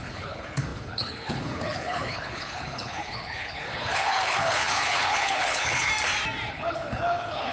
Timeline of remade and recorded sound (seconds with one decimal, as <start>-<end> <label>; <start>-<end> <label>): 0.0-5.9 remade; 5.9-6.5 recorded; 6.5-7.5 remade